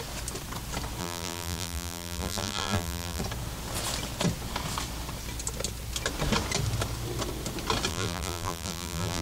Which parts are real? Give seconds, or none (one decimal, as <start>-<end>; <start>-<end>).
0.0-1.0; 3.2-7.9